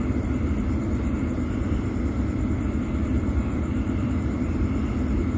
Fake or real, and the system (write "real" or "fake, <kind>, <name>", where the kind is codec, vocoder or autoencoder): real